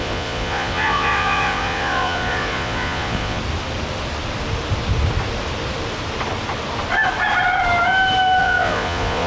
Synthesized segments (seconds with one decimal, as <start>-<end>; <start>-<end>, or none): 0.0-3.4; 8.4-9.3